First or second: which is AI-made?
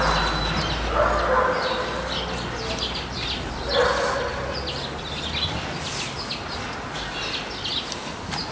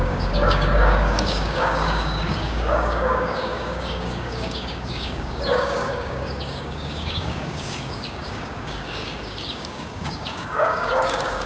second